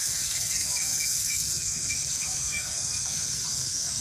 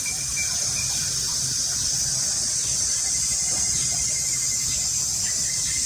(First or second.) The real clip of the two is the second